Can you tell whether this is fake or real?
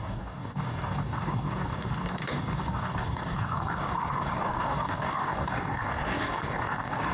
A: fake